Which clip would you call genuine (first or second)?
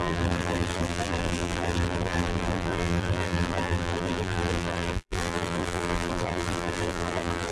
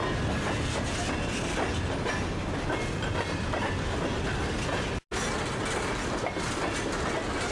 second